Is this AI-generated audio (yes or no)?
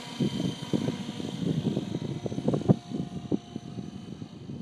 no